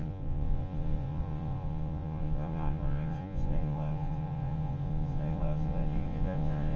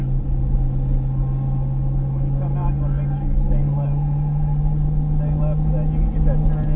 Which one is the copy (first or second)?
first